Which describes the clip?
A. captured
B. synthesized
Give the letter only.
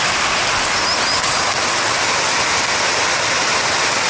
A